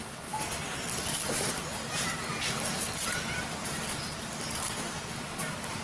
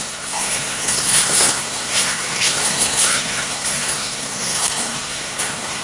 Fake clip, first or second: second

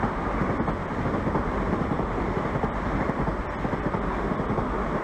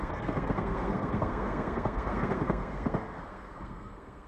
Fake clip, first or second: second